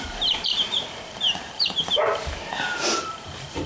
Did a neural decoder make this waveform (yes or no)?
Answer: yes